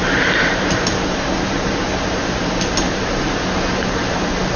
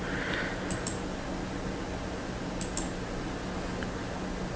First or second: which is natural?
second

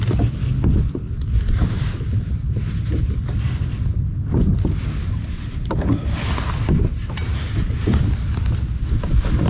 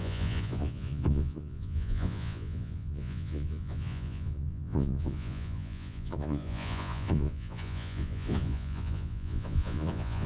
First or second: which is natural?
first